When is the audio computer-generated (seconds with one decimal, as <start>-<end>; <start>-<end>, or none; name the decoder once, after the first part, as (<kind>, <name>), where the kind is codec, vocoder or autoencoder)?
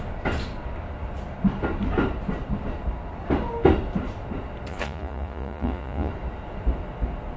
4.7-6.1 (vocoder, Vocos)